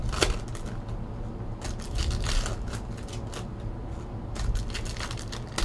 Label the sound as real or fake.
real